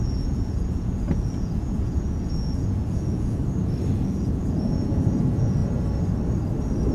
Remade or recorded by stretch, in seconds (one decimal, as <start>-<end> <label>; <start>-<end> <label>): 0.0-3.4 remade; 3.4-3.9 recorded; 3.9-5.6 remade; 5.6-6.9 recorded

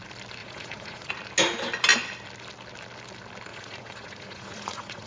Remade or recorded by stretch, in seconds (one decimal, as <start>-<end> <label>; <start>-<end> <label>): 0.0-0.4 recorded; 0.4-1.1 remade; 1.1-3.5 recorded; 3.5-5.1 remade

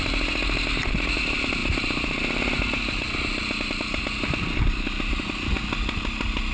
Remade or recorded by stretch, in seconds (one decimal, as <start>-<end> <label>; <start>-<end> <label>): 0.0-6.5 recorded